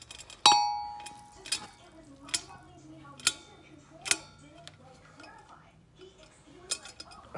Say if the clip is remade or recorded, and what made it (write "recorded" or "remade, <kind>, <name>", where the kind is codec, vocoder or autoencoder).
recorded